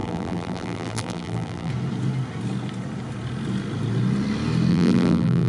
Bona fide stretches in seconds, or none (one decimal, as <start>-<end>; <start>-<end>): 1.7-4.7